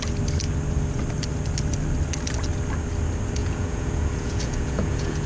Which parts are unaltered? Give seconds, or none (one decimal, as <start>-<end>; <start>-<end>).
0.0-3.4